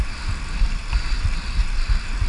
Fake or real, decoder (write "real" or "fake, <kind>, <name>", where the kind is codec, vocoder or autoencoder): real